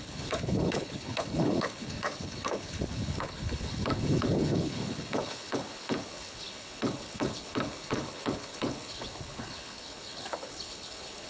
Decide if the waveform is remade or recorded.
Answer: remade